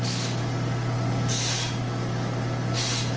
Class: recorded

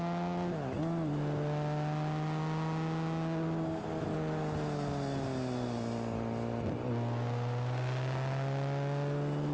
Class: recorded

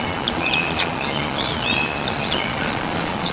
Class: remade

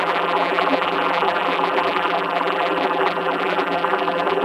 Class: remade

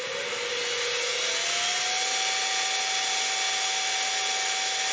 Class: recorded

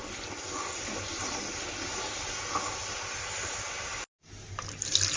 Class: recorded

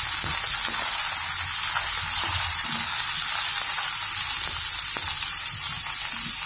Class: recorded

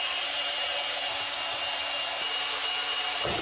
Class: recorded